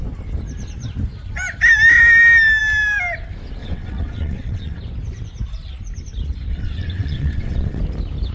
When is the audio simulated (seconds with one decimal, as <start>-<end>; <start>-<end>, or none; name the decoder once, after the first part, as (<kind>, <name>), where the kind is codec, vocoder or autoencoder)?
3.6-4.8 (vocoder, WaveNeXt); 6.5-7.8